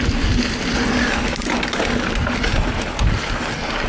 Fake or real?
real